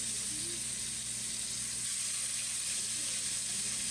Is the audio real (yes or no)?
yes